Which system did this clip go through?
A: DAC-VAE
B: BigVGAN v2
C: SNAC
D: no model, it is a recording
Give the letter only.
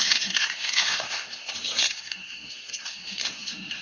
C